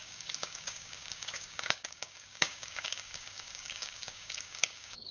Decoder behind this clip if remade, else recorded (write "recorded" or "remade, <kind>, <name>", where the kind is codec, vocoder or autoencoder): remade, codec, DAC